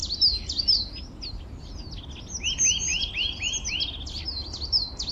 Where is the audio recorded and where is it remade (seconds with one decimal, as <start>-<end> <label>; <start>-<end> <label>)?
0.0-5.1 recorded